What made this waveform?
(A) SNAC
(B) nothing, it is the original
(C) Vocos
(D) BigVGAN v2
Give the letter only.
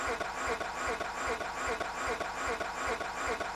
D